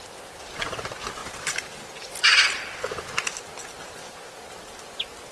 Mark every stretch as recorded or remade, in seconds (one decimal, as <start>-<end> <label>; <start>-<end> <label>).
0.0-5.3 recorded